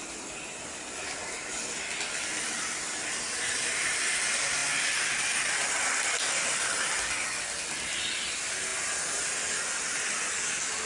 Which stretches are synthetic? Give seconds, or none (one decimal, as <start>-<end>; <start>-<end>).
none